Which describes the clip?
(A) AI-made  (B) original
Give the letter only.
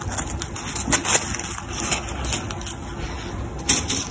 B